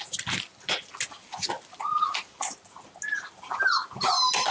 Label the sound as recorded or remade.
recorded